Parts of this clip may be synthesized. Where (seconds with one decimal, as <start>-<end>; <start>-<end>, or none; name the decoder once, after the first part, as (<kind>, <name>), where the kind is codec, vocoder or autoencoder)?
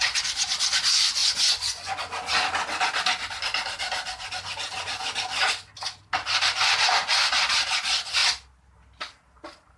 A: 1.2-2.0 (vocoder, Vocos)